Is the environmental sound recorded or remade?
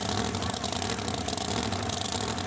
recorded